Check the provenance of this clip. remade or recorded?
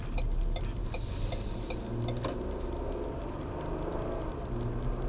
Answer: recorded